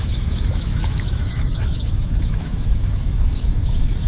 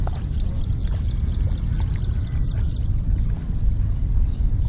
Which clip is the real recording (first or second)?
second